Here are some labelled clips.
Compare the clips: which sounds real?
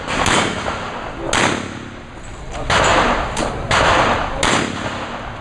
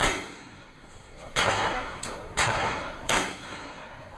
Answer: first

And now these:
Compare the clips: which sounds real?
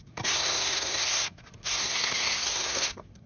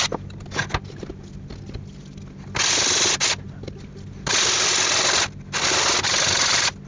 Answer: second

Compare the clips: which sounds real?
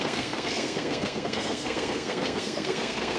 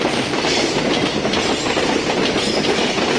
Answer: second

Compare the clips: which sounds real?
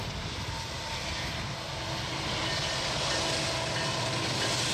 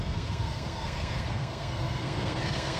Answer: first